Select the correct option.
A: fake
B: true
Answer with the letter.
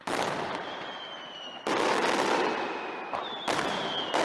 B